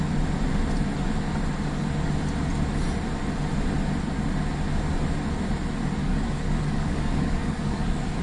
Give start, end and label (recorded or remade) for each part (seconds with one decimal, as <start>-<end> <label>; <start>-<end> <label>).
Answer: 0.0-6.0 recorded; 6.0-8.2 remade

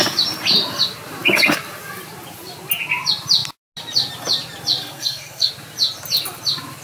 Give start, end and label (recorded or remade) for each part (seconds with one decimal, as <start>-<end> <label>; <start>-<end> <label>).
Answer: 0.0-4.8 recorded; 4.8-5.5 remade; 5.5-6.8 recorded

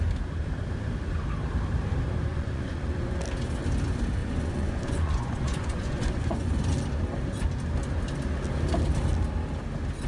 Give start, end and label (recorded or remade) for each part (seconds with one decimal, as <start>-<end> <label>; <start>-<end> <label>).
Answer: 0.0-2.3 recorded; 2.3-3.2 remade; 3.2-4.2 recorded; 4.2-6.6 remade; 6.6-10.1 recorded

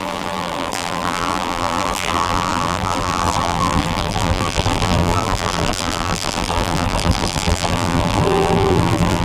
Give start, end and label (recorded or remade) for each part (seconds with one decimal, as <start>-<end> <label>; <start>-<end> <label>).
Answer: 0.0-9.2 remade

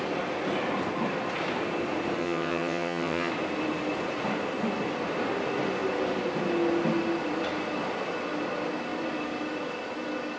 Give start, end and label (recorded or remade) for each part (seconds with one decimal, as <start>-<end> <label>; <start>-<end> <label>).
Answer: 0.0-2.2 recorded; 2.2-3.3 remade; 3.3-10.4 recorded

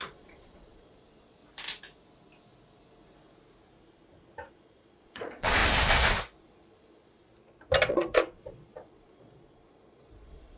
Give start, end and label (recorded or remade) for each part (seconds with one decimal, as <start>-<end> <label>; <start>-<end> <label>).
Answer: 0.0-1.4 remade; 1.4-4.5 recorded; 4.5-5.6 remade; 5.6-6.4 recorded; 6.4-7.3 remade; 7.3-7.9 recorded; 7.9-10.6 remade

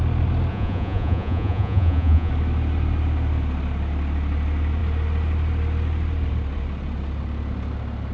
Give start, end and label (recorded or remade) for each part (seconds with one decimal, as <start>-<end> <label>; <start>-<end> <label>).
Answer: 0.0-0.5 recorded; 0.5-2.3 remade; 2.3-8.1 recorded

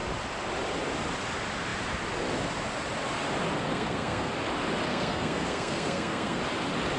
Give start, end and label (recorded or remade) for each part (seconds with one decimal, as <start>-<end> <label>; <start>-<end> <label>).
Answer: 0.0-3.7 recorded; 3.7-4.3 remade; 4.3-4.9 recorded; 4.9-6.4 remade; 6.4-7.0 recorded